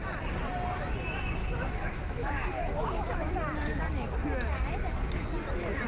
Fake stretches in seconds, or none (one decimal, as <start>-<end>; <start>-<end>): 1.4-3.3